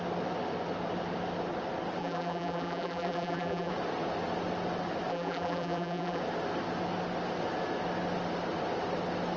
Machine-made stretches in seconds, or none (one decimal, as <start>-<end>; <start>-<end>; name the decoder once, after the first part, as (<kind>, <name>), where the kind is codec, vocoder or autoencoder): 2.0-3.7 (vocoder, BigVGAN v2); 5.1-6.2